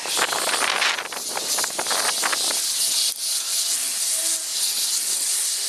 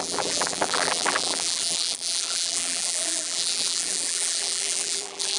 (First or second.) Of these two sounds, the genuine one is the first